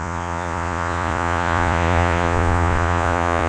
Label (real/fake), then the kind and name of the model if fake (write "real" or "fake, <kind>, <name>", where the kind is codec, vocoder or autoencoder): fake, vocoder, Vocos